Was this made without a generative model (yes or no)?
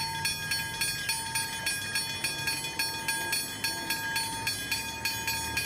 yes